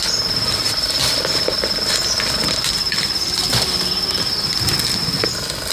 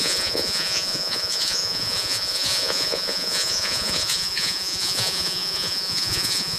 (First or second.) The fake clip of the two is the second